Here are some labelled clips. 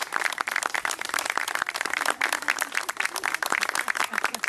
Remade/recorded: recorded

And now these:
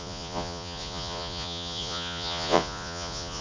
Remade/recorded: remade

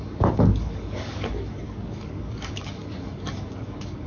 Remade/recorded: remade